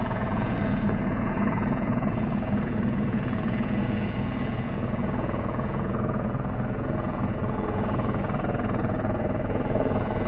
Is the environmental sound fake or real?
fake